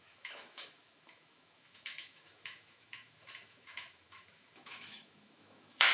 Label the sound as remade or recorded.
remade